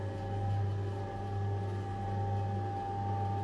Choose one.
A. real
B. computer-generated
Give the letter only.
A